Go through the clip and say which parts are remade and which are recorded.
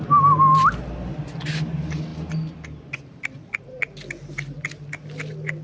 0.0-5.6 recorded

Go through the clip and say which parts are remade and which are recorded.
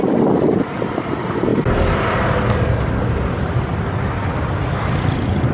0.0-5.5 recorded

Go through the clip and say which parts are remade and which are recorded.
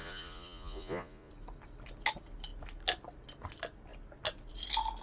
0.0-1.3 remade; 1.3-5.0 recorded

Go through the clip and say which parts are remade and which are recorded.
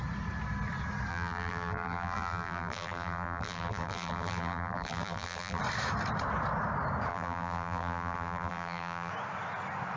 0.0-1.1 recorded; 1.1-5.6 remade; 5.6-7.1 recorded; 7.1-9.1 remade; 9.1-10.0 recorded